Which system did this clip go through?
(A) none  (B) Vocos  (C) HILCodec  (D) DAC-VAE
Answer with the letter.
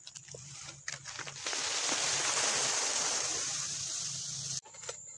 A